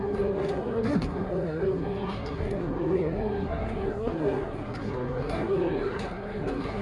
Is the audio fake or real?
fake